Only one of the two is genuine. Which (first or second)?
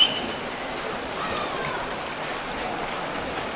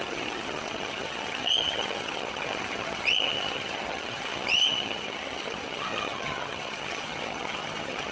first